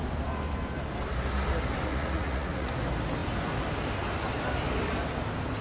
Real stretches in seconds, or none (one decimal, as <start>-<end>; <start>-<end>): 0.0-1.9; 2.7-5.6